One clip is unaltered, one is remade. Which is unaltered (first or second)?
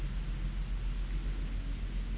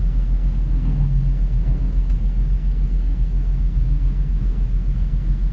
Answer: first